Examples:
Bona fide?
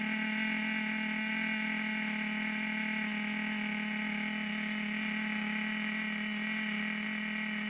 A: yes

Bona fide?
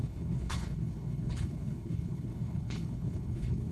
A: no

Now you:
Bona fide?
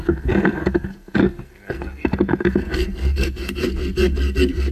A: no